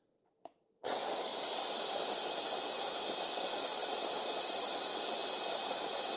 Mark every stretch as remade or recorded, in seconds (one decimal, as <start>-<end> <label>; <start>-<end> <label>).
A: 0.0-1.3 remade; 1.3-3.0 recorded; 3.0-4.9 remade; 4.9-6.2 recorded